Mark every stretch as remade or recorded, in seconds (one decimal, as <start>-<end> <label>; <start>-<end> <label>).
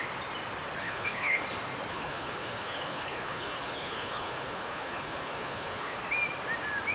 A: 0.0-0.8 recorded; 0.8-1.4 remade; 1.4-1.9 recorded; 1.9-6.0 remade; 6.0-6.9 recorded